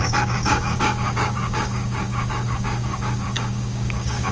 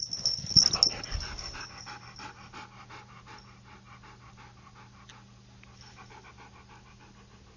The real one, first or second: second